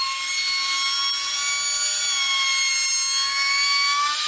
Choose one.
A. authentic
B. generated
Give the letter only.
A